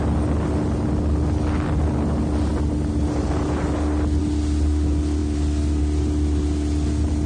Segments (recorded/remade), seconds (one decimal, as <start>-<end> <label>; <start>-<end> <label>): 0.0-7.3 recorded